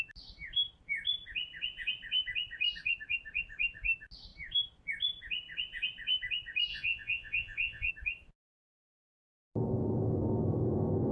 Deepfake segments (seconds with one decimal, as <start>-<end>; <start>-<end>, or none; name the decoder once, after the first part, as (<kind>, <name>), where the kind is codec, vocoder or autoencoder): 6.7-7.9 (vocoder, Vocos)